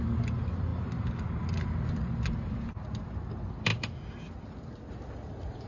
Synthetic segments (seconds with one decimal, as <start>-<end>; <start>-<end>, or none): none